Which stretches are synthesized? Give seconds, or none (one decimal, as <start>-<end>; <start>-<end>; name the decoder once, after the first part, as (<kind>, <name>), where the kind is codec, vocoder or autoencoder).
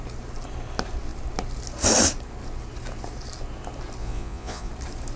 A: 4.0-4.7 (vocoder, Vocos)